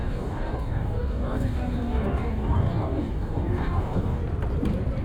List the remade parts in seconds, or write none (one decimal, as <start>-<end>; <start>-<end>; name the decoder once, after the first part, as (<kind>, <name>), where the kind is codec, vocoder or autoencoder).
0.0-4.2 (codec, DAC)